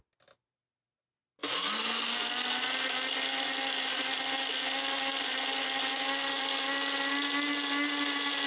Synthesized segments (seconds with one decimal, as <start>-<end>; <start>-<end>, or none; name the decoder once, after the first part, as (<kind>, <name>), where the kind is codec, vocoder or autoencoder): none